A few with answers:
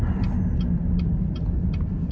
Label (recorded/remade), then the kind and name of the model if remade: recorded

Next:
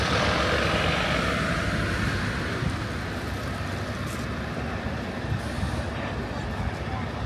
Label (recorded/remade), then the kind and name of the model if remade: recorded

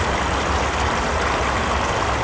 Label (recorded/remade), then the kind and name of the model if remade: recorded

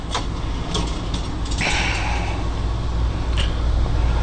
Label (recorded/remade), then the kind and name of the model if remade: recorded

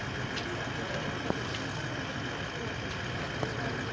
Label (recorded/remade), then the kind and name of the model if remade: recorded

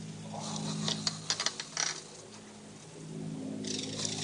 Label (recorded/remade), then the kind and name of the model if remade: recorded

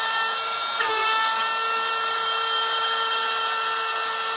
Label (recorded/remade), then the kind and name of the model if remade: recorded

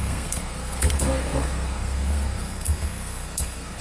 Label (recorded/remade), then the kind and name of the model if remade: remade, codec, SNAC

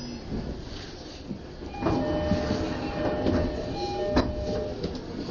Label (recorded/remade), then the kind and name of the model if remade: recorded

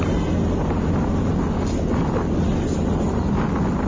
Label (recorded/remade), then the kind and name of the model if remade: recorded